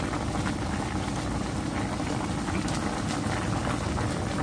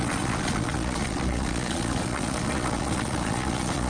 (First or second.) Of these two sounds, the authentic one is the first